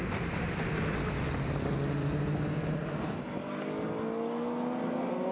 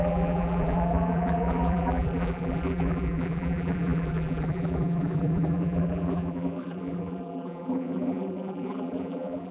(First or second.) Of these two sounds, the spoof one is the second